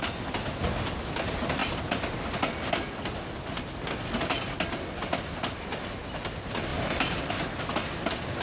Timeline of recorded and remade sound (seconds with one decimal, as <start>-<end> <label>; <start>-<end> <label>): 0.0-6.7 recorded; 6.7-7.3 remade; 7.3-8.4 recorded